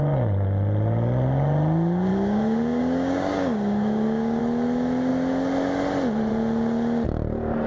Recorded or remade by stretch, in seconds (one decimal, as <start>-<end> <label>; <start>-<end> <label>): 0.0-2.1 recorded; 2.1-4.4 remade; 4.4-7.7 recorded

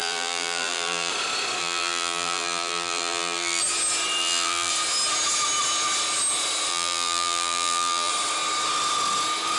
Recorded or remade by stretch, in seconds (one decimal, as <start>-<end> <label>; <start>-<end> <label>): 0.0-1.1 remade; 1.1-1.6 recorded; 1.6-3.6 remade; 3.6-4.2 recorded; 4.2-4.7 remade; 4.7-6.7 recorded; 6.7-8.1 remade; 8.1-9.6 recorded

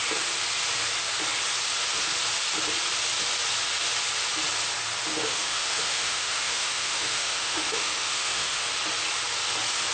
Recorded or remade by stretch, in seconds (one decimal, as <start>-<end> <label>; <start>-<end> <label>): 0.0-5.1 recorded; 5.1-8.6 remade; 8.6-9.9 recorded

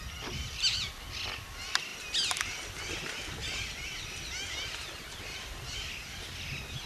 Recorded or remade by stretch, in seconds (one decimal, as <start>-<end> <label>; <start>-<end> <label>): 0.0-6.9 recorded

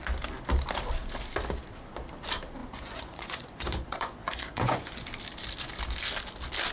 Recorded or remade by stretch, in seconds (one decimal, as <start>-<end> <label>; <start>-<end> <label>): 0.0-2.6 recorded; 2.6-4.9 remade; 4.9-6.7 recorded

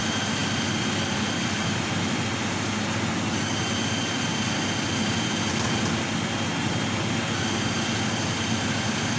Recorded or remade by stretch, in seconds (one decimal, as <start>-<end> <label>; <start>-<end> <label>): 0.0-9.2 recorded